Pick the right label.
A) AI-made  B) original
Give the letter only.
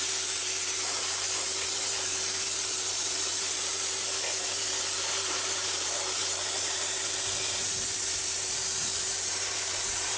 A